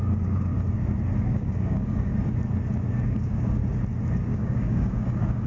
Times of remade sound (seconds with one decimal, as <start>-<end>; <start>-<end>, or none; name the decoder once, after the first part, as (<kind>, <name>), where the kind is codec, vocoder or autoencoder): 0.0-0.5 (codec, DAC); 1.2-2.1; 2.9-3.6; 4.3-5.5